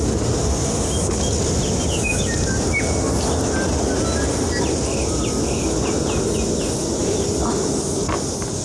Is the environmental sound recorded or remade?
recorded